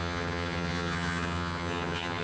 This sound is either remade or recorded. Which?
remade